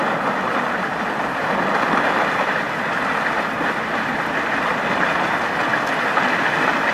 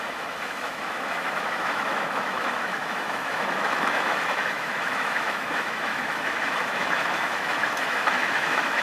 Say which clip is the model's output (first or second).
second